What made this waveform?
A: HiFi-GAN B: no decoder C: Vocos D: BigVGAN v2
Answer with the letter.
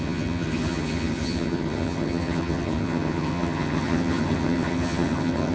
A